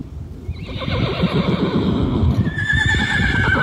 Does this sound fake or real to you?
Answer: fake